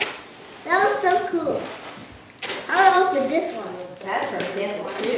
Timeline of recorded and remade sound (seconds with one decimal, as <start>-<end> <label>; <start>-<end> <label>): 0.0-2.0 recorded; 2.0-3.5 remade; 3.5-3.9 recorded; 3.9-4.6 remade; 4.6-5.2 recorded